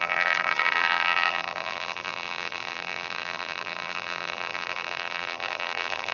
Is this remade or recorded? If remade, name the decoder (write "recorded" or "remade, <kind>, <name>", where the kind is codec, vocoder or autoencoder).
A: remade, vocoder, BigVGAN v2